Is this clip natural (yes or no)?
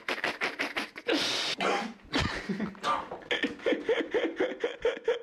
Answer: yes